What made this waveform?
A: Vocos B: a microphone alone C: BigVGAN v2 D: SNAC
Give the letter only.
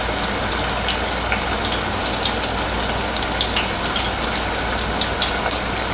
B